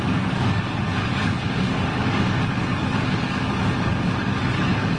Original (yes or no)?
no